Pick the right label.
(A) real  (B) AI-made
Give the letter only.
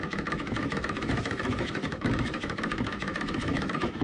B